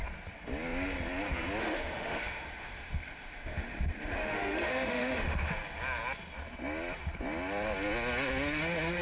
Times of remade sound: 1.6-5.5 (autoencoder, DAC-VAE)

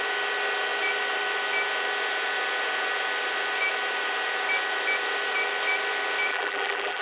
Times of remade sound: 6.3-7.0 (vocoder, BigVGAN v2)

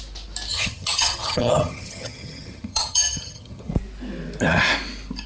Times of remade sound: 0.5-3.7 (vocoder, HiFi-GAN)

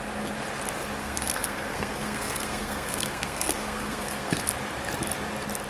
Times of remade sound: 1.0-4.4 (codec, SNAC)

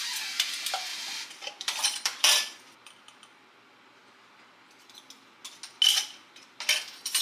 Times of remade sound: 0.9-2.9 (vocoder, BigVGAN v2)

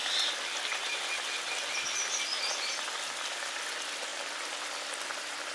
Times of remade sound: none

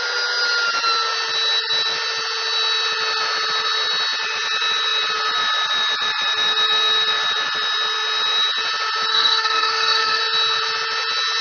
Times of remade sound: 9.1-10.2 (codec, SNAC)